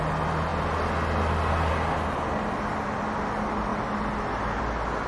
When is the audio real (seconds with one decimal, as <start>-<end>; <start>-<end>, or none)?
0.0-5.1